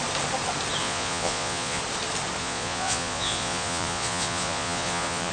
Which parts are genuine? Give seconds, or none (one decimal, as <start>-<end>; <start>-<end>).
0.0-0.8; 1.8-2.4